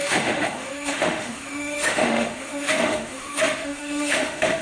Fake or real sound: fake